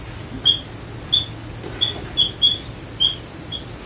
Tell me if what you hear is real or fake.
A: real